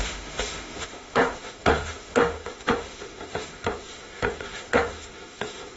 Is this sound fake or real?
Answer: fake